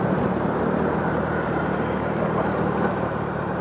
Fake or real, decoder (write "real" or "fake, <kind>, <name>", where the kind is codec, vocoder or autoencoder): fake, vocoder, BigVGAN v2